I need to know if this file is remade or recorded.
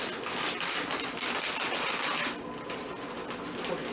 recorded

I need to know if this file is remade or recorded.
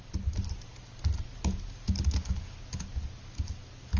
recorded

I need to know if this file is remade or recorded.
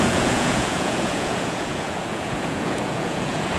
remade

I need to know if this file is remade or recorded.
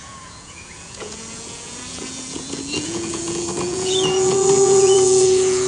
remade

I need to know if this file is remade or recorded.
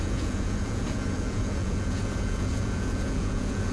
remade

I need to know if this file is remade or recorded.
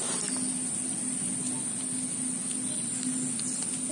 recorded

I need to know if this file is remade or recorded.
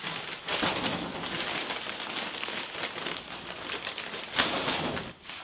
recorded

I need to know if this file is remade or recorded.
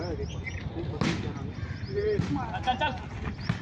recorded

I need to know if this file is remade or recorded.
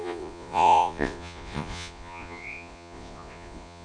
remade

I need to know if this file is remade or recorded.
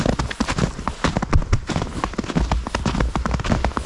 recorded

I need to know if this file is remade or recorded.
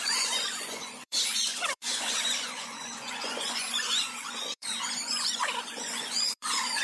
remade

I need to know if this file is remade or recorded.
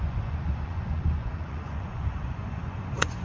remade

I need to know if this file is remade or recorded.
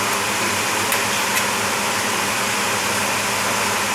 recorded